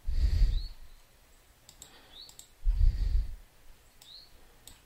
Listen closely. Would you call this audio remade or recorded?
recorded